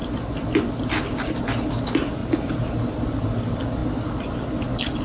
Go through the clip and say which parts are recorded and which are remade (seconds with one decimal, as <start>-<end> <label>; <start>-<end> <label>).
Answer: 0.0-2.2 recorded; 2.2-2.9 remade; 2.9-5.0 recorded